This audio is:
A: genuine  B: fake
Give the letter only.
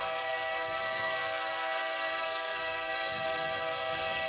B